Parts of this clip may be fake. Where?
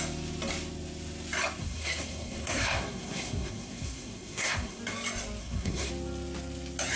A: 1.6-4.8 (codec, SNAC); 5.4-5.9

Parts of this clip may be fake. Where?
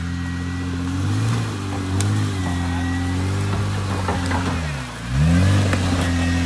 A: none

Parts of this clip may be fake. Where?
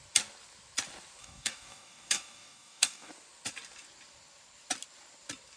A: 1.2-3.1 (codec, DAC)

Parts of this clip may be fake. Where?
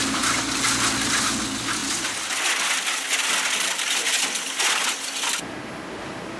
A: none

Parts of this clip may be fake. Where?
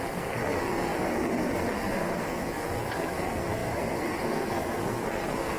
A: 0.0-5.6 (codec, SNAC)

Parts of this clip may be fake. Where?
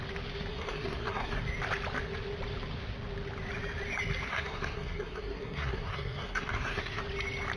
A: 0.5-1.4 (codec, SNAC); 4.3-7.0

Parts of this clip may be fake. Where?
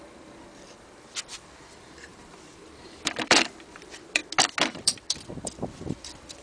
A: 0.0-4.2 (vocoder, BigVGAN v2); 4.8-6.4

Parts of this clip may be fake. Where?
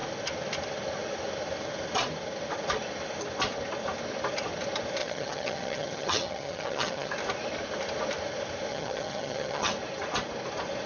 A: 5.0-7.1 (vocoder, HiFi-GAN); 8.7-9.7